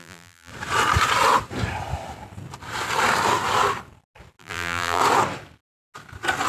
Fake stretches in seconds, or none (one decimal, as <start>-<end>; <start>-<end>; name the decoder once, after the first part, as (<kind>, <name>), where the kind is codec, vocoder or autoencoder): 0.0-0.5 (vocoder, BigVGAN v2); 4.4-5.0